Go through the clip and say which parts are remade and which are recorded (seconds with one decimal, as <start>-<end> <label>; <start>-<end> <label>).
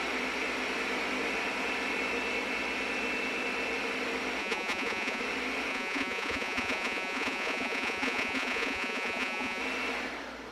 0.0-4.4 recorded; 4.4-5.2 remade; 5.2-5.7 recorded; 5.7-9.6 remade; 9.6-10.5 recorded